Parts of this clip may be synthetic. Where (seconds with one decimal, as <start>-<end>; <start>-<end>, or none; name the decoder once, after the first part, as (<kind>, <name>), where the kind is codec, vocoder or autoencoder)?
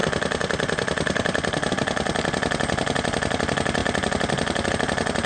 none